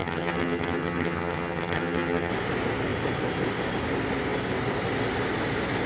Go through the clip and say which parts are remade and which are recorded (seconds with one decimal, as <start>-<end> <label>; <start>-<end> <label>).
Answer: 0.0-2.3 remade; 2.3-5.9 recorded